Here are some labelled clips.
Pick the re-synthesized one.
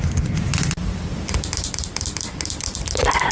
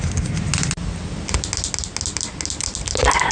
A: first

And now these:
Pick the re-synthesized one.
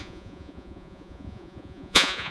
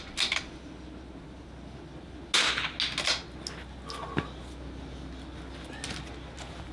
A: first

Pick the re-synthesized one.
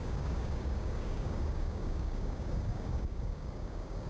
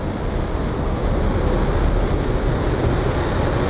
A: first